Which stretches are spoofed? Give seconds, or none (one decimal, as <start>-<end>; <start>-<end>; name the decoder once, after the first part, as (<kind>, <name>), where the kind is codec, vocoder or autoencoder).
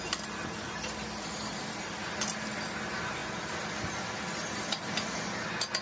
none